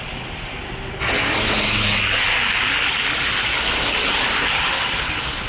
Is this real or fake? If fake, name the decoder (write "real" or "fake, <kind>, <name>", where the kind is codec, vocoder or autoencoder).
real